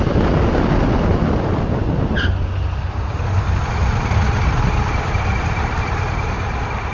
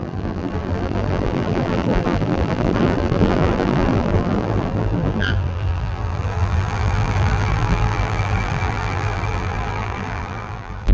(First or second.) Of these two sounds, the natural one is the first